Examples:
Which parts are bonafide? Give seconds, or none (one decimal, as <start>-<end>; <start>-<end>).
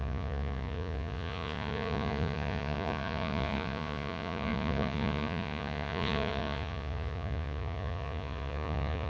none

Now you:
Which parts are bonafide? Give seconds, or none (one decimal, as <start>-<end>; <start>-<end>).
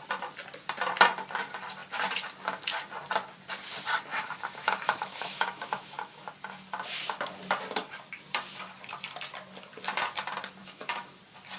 0.0-4.1; 6.3-10.6; 11.2-11.6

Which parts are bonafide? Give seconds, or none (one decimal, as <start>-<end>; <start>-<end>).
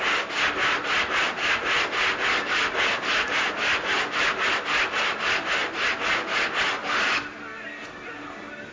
0.0-8.7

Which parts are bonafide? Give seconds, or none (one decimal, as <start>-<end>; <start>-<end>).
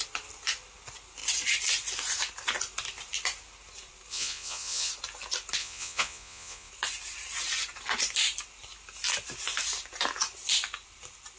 0.0-4.1; 4.9-5.6; 6.7-11.4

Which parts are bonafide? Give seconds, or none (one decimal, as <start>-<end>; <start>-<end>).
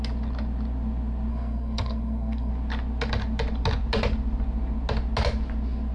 0.0-1.3; 2.5-5.9